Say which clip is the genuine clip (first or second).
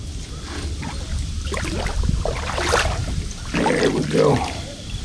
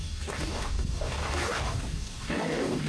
first